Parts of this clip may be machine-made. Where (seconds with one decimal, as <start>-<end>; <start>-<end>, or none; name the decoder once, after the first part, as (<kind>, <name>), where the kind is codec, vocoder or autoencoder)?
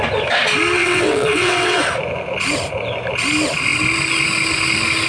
0.8-1.8 (vocoder, WaveNeXt)